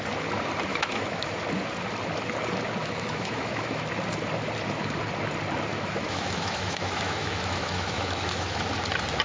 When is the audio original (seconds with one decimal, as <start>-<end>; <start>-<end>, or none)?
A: 0.0-0.7; 1.3-2.8; 3.8-5.7; 8.6-9.2